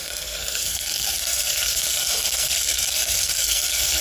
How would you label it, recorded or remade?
remade